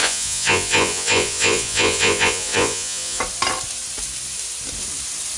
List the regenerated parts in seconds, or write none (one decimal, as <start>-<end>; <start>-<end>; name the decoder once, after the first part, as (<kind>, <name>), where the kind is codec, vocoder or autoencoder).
0.0-3.2 (vocoder, Vocos)